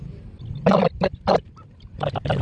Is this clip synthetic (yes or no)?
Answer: no